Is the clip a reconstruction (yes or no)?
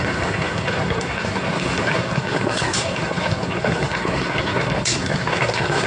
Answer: yes